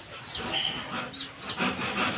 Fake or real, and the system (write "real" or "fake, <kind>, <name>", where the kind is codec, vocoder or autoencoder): real